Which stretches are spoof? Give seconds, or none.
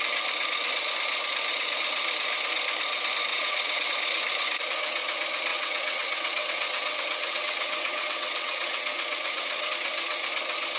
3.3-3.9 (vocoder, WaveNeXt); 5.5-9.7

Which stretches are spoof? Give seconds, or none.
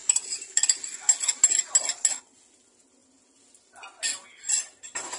none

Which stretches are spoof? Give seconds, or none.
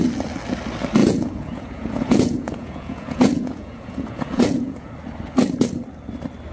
1.0-4.9 (vocoder, Vocos)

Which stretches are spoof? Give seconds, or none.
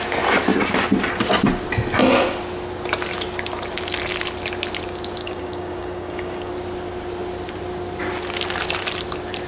5.2-6.5 (codec, DAC)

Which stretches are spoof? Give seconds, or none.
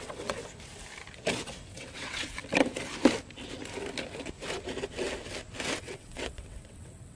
0.0-0.4 (vocoder, WaveNeXt); 1.7-2.4; 5.8-7.2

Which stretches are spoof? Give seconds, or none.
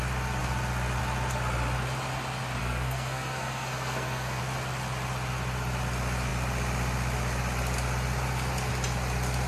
2.6-4.4 (codec, SNAC)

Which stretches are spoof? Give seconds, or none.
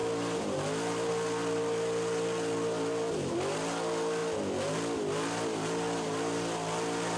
none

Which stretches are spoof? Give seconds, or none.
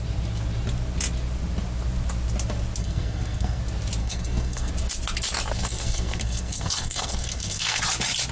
2.8-3.6 (codec, SNAC); 4.0-4.7; 5.5-7.8